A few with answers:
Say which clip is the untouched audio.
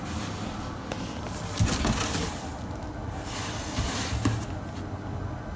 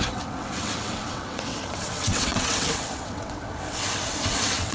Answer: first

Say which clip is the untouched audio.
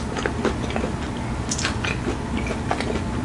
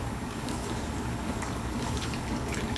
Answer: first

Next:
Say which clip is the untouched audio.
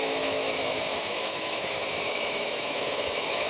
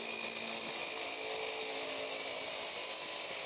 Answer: second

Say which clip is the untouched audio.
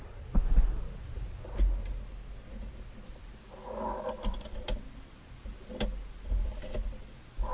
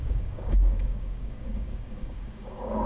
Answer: first